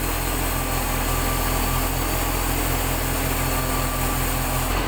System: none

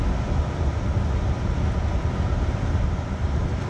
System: none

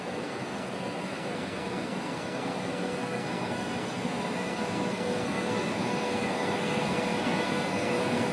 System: codec, SNAC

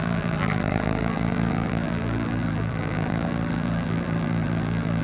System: vocoder, BigVGAN v2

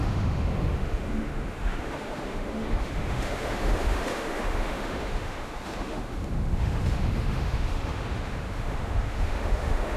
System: autoencoder, DAC-VAE